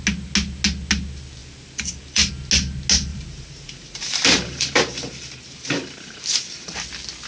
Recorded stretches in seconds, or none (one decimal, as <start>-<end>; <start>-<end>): 0.0-1.4; 2.3-3.1; 6.8-7.3